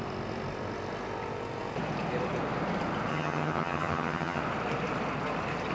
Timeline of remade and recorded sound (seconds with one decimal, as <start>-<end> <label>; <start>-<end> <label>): 0.0-3.1 recorded; 3.1-4.4 remade; 4.4-5.7 recorded